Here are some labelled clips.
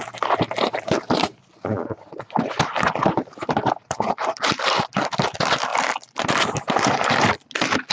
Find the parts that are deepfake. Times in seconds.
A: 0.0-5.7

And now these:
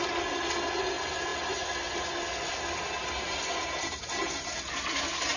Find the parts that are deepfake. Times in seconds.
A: none

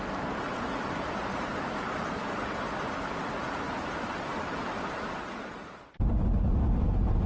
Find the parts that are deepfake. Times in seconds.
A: none

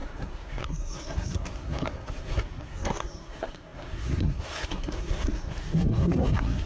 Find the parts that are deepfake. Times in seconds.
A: 0.0-6.7